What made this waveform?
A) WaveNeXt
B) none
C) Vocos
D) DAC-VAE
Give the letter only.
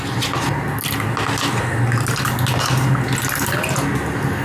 B